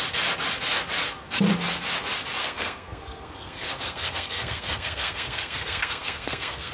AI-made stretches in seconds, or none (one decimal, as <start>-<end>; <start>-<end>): 2.4-6.7